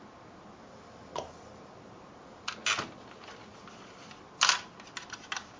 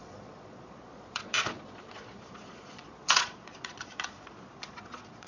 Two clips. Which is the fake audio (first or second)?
second